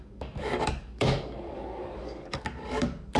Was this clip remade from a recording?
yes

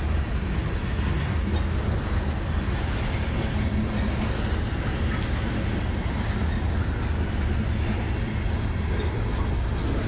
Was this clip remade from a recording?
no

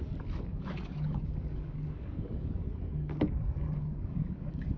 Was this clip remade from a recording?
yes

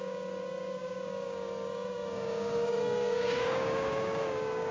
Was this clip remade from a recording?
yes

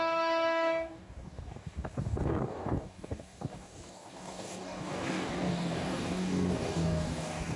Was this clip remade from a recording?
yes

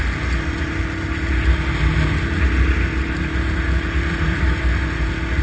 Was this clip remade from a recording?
no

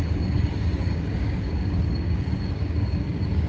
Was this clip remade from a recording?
yes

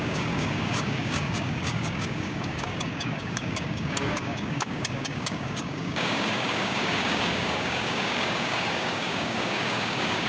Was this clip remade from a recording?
yes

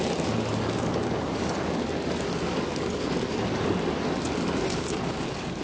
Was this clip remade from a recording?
yes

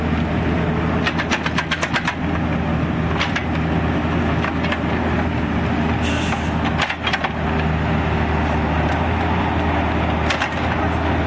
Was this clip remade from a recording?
no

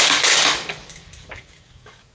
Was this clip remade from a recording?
yes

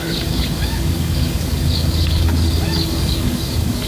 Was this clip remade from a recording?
yes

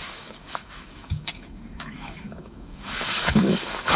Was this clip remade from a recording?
yes